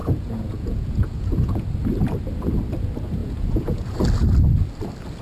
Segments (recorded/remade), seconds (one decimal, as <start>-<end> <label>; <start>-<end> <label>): 0.0-1.7 remade; 1.7-3.2 recorded; 3.2-4.0 remade; 4.0-5.2 recorded